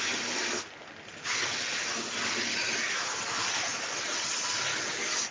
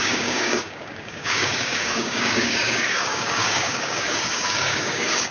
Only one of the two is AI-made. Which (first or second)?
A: second